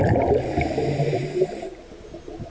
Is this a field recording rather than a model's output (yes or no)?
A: yes